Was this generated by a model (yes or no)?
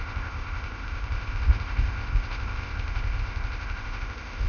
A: yes